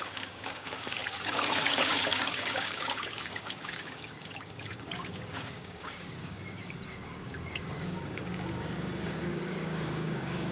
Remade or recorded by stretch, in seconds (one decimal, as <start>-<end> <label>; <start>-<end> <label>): 0.0-10.5 remade